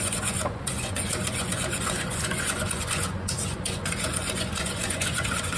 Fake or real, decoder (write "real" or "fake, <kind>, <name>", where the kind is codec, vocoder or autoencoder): fake, vocoder, Vocos